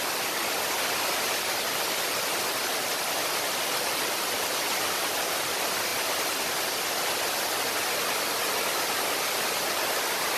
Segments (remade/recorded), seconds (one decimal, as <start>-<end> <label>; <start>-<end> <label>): 0.0-10.4 recorded